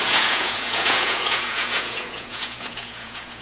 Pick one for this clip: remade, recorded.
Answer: remade